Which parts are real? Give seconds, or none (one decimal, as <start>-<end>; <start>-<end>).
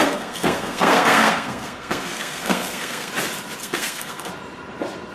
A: 3.1-3.6; 4.3-5.1